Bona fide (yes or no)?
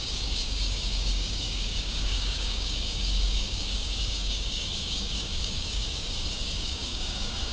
no